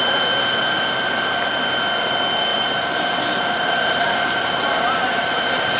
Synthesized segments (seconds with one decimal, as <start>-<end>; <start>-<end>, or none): 2.5-5.8